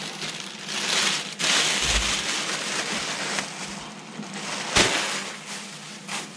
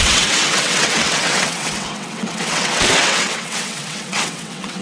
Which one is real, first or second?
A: first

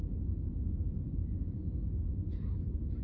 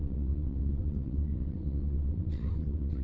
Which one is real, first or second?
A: first